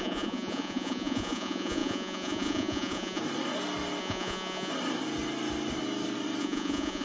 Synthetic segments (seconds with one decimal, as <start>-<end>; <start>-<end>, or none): 0.0-3.2; 4.0-4.7; 6.4-7.0